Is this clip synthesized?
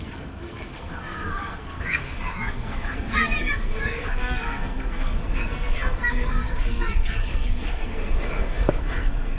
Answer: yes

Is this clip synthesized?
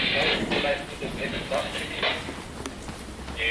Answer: no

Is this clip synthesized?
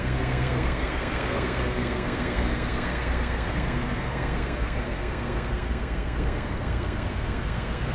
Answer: yes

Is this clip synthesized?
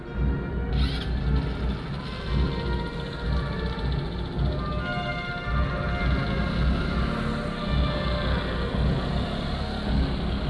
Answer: no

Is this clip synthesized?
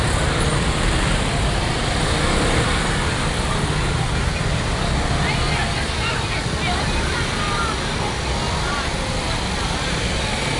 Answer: no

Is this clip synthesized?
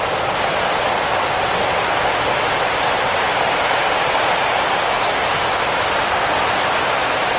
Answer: no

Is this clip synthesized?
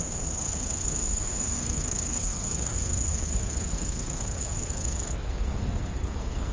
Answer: yes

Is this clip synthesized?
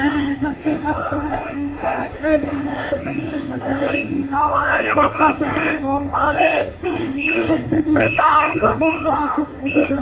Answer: yes